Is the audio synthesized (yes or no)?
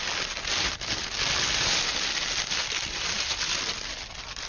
no